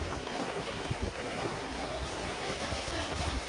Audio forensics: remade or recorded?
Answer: remade